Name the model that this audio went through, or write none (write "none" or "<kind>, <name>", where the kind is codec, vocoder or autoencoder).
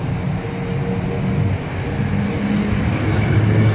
none